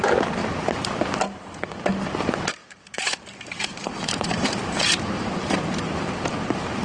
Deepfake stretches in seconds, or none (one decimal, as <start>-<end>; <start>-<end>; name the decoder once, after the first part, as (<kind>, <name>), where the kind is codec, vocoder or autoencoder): 2.6-6.8 (vocoder, BigVGAN v2)